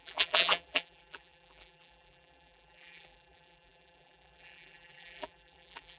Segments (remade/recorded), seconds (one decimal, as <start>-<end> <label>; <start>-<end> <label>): 0.0-6.0 remade